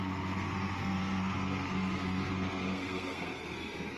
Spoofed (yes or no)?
yes